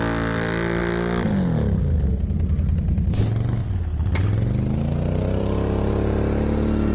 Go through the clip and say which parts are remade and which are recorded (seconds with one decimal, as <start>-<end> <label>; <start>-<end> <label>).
0.0-3.6 recorded; 3.6-5.4 remade; 5.4-6.9 recorded